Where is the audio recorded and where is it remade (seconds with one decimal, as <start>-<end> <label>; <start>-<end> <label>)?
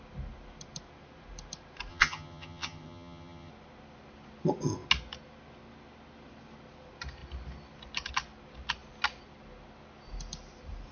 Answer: 0.0-1.9 recorded; 1.9-3.5 remade; 3.5-10.9 recorded